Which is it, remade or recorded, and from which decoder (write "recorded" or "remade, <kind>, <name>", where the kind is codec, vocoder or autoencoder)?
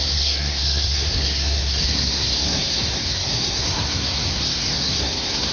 remade, codec, SNAC